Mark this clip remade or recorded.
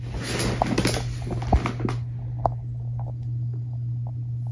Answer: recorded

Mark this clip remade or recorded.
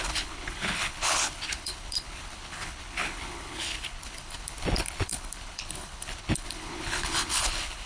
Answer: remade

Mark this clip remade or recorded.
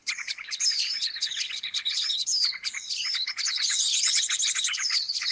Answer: remade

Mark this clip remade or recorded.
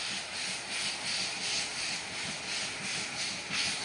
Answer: recorded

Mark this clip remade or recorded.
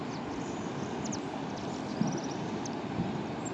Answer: recorded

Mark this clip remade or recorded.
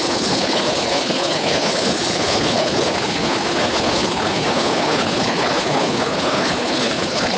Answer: remade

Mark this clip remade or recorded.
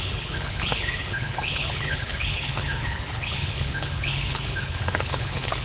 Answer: remade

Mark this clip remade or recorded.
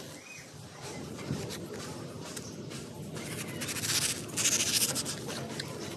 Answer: recorded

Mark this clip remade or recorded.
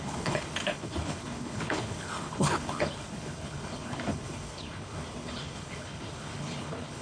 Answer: remade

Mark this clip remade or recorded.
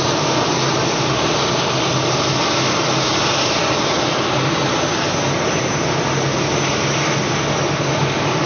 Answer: recorded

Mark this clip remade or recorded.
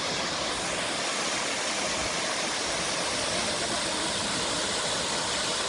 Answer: recorded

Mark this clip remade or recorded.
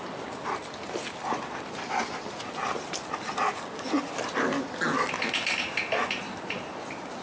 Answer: recorded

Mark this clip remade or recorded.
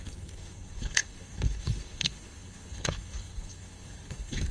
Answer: remade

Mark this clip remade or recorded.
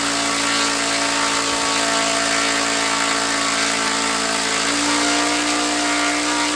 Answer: recorded